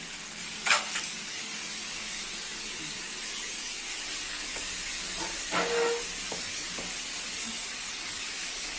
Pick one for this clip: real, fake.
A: fake